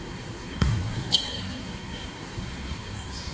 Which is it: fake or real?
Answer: fake